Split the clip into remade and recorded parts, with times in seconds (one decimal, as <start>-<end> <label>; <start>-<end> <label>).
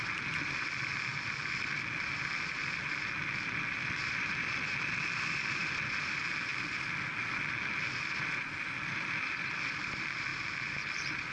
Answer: 0.0-6.5 remade; 6.5-8.0 recorded; 8.0-11.3 remade